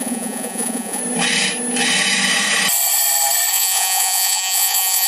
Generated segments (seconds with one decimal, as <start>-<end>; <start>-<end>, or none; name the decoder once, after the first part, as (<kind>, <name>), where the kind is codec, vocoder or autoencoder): 0.0-1.0 (vocoder, Vocos); 3.5-5.1